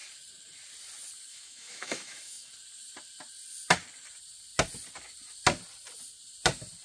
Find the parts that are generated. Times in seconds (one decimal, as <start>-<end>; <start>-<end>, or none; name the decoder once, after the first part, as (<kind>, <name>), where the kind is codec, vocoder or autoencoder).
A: 1.3-2.5 (autoencoder, DAC-VAE)